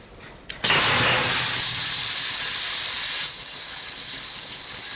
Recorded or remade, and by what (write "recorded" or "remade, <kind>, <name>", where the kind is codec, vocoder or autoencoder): recorded